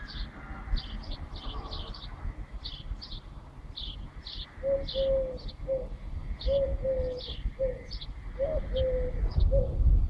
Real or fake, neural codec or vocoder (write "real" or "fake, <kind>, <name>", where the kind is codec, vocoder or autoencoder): real